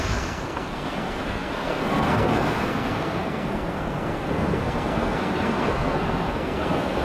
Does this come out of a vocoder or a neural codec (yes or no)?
yes